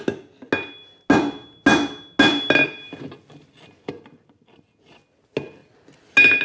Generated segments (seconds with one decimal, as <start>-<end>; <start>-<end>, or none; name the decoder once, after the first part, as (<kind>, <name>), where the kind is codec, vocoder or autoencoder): none